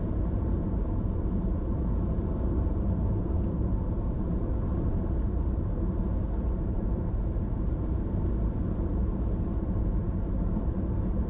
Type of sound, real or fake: fake